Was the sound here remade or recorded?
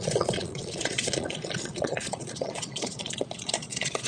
remade